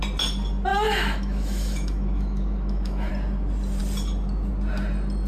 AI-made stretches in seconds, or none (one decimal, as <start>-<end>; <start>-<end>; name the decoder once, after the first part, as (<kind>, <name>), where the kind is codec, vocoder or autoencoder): 0.7-3.1 (autoencoder, DAC-VAE)